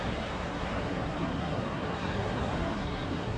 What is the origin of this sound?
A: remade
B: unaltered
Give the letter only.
A